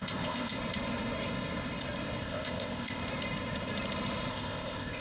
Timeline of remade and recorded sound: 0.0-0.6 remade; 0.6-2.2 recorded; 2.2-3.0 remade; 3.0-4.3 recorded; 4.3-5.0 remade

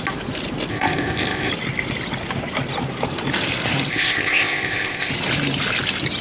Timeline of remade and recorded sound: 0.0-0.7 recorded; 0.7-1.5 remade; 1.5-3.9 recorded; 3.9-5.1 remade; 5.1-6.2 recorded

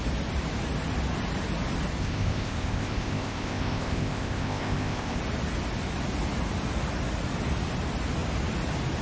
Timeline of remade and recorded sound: 0.0-2.0 recorded; 2.0-5.2 remade; 5.2-9.0 recorded

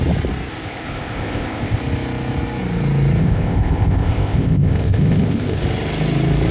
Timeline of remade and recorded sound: 0.0-0.5 recorded; 0.5-1.8 remade; 1.8-3.2 recorded; 3.2-5.6 remade; 5.6-6.5 recorded

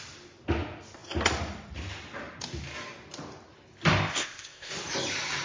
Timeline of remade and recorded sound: 0.0-4.0 recorded; 4.0-4.7 remade; 4.7-5.4 recorded

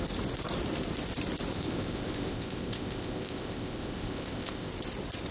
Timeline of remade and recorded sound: 0.0-1.5 recorded; 1.5-4.7 remade; 4.7-5.3 recorded

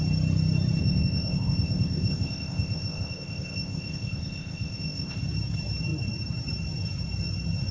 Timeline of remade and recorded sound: 0.0-0.8 recorded; 0.8-5.2 remade; 5.2-7.7 recorded